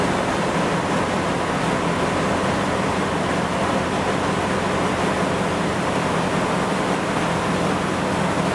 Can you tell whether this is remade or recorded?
recorded